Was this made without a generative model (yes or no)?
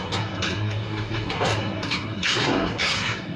no